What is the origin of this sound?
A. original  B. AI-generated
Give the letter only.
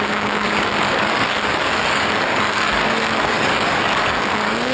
B